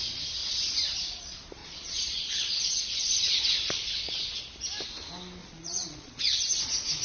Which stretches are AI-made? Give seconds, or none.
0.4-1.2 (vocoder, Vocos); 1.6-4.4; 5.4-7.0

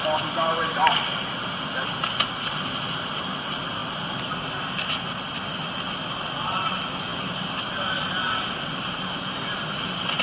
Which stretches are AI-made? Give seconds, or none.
none

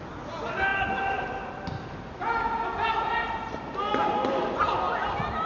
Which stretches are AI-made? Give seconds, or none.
none

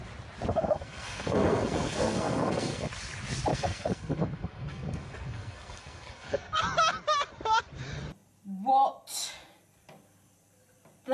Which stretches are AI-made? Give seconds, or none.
0.5-2.9 (codec, SNAC); 3.5-6.6

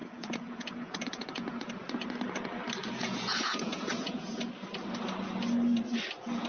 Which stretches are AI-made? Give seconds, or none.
0.0-1.7 (vocoder, Vocos); 2.8-4.5

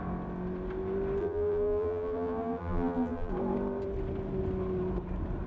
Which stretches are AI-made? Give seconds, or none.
1.2-3.3 (vocoder, BigVGAN v2)